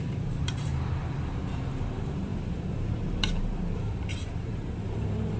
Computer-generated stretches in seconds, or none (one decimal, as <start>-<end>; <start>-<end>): 0.0-5.4